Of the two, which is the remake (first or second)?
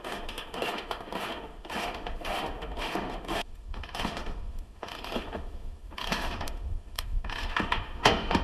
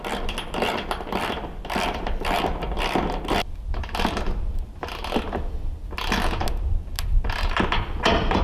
first